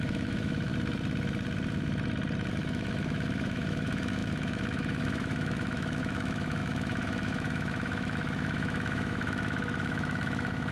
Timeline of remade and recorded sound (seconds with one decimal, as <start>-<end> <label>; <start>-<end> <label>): 0.0-0.7 remade; 0.7-2.5 recorded; 2.5-10.7 remade